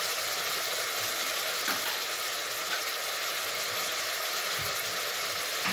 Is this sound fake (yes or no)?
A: no